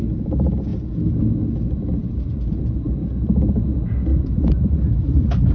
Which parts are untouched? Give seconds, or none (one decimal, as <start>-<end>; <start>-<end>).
0.0-2.0; 3.3-4.1